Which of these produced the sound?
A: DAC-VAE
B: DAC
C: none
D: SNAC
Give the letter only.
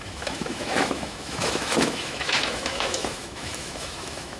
A